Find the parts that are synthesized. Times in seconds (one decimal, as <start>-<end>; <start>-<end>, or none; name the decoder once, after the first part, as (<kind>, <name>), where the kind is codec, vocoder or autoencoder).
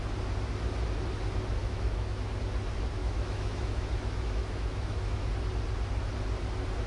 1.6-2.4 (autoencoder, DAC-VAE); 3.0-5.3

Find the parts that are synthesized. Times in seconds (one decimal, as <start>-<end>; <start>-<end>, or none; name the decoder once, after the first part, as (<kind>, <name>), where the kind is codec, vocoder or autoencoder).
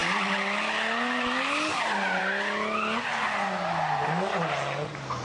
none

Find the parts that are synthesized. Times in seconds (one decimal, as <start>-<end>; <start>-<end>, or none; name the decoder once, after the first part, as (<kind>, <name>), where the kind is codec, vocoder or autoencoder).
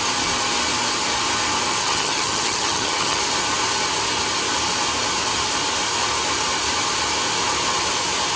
1.8-3.2 (vocoder, HiFi-GAN)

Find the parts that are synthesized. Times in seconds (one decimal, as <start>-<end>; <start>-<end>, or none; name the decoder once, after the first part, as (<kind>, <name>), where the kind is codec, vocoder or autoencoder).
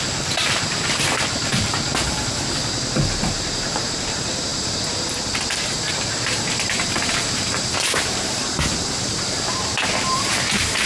0.0-1.9 (vocoder, BigVGAN v2); 3.2-10.9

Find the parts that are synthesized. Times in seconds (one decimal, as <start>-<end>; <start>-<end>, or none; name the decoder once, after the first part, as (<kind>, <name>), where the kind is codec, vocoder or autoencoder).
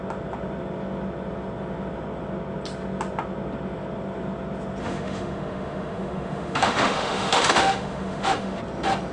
4.8-8.6 (autoencoder, DAC-VAE)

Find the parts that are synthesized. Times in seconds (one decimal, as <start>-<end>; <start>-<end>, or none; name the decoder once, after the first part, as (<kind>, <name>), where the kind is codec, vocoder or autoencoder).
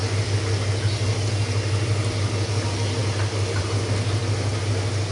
none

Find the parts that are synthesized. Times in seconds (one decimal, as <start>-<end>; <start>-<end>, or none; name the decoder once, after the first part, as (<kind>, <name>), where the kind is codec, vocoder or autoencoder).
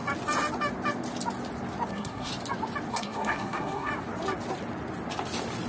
1.9-2.3 (codec, SNAC); 2.9-3.9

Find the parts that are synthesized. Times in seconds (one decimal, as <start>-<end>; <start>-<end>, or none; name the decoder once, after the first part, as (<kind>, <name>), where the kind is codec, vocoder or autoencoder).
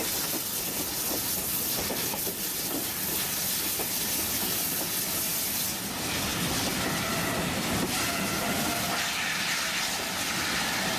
none